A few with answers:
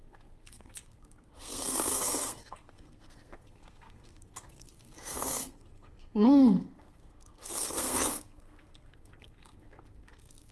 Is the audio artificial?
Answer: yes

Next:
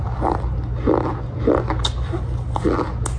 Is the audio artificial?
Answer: no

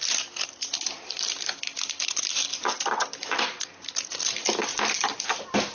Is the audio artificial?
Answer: no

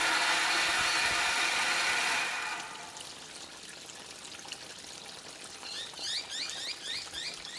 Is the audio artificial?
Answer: no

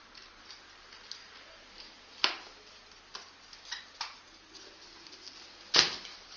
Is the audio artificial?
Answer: no